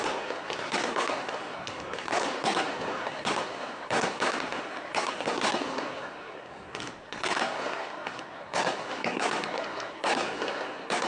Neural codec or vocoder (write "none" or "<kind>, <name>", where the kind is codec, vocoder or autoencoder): codec, SNAC